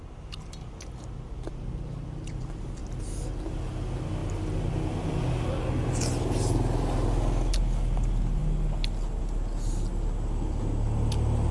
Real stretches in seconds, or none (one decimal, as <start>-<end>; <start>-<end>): 0.0-11.5